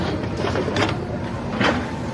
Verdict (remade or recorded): remade